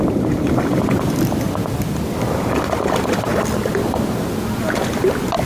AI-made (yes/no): no